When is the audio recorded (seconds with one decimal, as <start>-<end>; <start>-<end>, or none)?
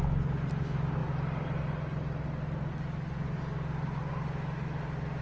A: 0.0-5.2